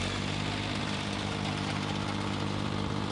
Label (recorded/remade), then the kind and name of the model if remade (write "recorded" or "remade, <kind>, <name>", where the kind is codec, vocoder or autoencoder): remade, vocoder, BigVGAN v2